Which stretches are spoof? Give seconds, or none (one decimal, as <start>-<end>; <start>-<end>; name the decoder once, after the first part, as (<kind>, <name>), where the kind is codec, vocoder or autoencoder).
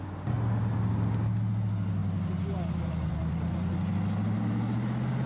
none